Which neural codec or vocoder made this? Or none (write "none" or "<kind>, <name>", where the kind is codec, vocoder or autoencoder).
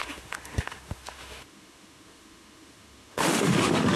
autoencoder, DAC-VAE